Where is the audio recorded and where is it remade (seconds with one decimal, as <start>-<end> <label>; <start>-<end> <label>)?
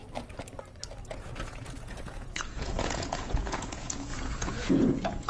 0.0-1.0 recorded; 1.0-5.3 remade